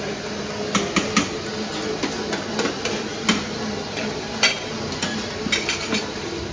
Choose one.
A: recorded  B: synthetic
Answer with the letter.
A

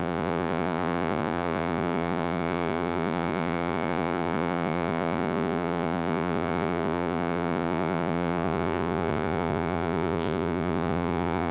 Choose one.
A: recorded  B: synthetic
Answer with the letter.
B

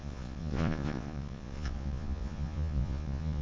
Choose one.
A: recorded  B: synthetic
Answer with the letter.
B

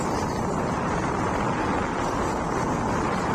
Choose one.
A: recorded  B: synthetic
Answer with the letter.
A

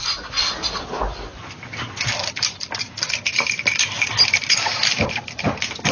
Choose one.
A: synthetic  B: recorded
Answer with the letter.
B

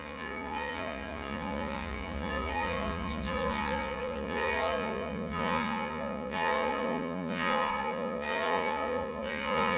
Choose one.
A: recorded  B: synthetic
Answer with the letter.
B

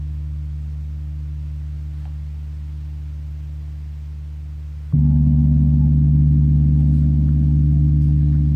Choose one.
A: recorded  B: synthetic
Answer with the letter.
A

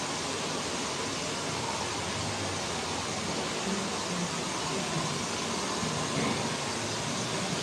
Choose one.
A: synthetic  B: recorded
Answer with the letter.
B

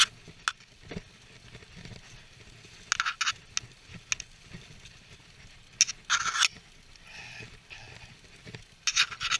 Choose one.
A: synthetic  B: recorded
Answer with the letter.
B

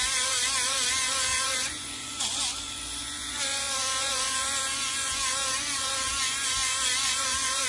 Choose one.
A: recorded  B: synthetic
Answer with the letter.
B